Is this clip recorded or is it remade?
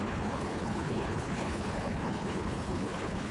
remade